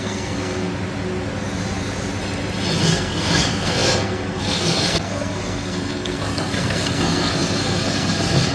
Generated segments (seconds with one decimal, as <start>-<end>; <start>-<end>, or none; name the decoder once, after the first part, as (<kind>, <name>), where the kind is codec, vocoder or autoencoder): 0.0-0.7 (codec, SNAC); 2.8-8.5